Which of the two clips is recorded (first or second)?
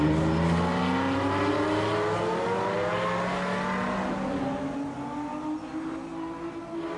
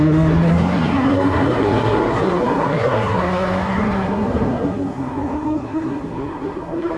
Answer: first